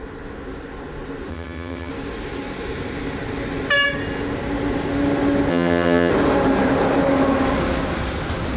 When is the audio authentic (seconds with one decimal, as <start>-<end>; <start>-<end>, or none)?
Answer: 0.0-1.3; 1.9-5.5; 6.1-8.6